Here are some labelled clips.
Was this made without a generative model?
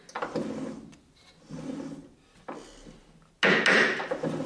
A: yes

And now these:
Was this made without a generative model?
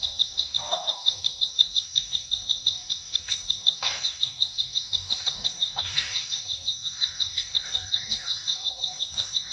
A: no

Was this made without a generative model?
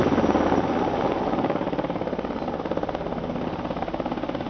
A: yes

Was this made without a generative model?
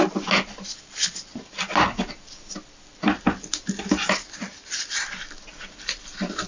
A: yes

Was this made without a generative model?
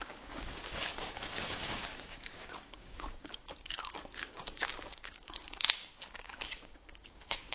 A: no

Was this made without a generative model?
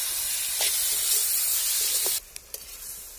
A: yes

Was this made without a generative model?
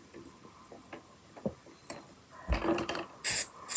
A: yes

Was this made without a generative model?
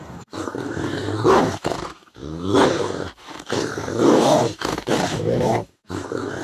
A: no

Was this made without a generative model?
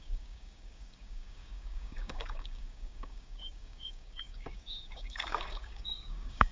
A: no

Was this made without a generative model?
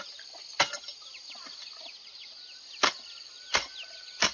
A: yes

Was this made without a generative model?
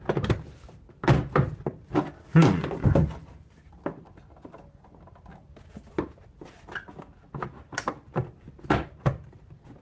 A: yes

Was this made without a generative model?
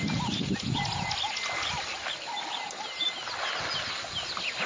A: yes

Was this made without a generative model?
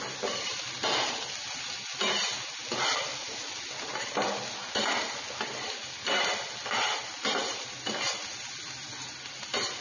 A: yes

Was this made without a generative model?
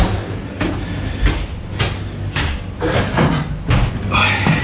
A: yes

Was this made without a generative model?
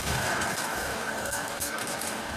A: no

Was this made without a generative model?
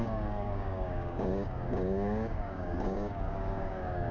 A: no